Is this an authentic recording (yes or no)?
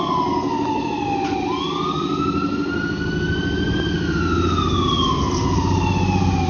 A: yes